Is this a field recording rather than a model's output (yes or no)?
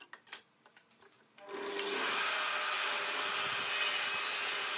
yes